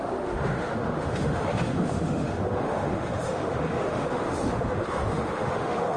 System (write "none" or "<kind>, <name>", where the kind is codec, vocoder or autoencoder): autoencoder, DAC-VAE